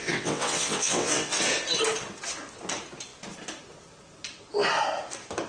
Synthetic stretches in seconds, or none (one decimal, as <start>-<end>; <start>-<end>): 0.0-1.4